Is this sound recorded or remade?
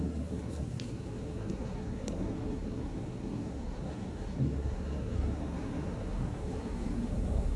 remade